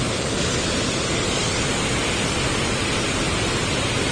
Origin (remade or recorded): recorded